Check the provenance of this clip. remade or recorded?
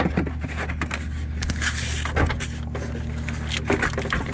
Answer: recorded